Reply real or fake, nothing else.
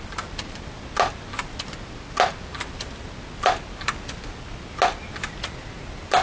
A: real